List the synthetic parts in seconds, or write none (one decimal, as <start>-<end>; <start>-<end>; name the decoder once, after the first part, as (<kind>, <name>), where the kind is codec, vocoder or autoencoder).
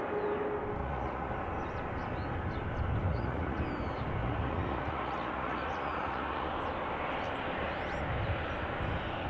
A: 0.8-1.3 (vocoder, Vocos); 3.1-3.6; 4.2-6.5